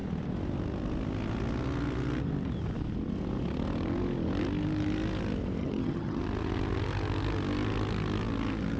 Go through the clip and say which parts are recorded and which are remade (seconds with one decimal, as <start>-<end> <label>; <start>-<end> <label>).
0.0-5.6 recorded; 5.6-6.2 remade; 6.2-8.8 recorded